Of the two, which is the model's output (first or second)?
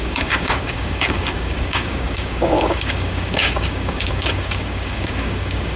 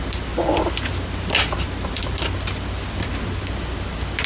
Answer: first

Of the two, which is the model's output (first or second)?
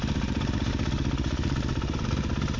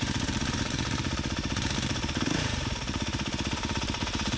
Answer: second